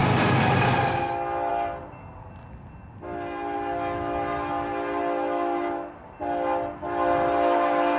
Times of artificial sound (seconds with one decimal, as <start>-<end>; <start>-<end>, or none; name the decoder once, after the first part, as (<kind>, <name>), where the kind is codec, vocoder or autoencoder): none